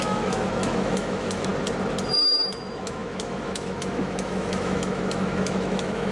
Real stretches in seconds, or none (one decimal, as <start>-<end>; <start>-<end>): 1.5-2.1